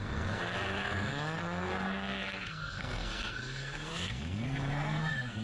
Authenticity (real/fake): fake